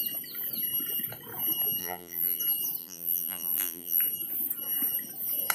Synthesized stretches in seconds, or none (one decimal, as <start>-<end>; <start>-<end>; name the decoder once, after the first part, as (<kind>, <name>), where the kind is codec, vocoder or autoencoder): 1.8-2.4 (vocoder, BigVGAN v2); 2.8-4.0